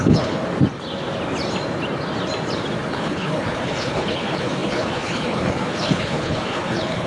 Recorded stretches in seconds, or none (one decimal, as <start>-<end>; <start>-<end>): 0.4-2.9